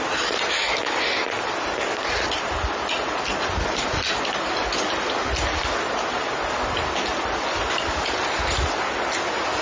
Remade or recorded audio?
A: recorded